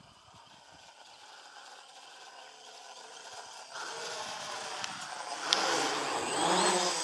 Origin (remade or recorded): recorded